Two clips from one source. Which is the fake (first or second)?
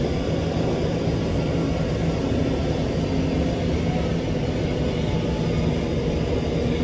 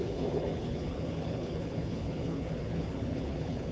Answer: second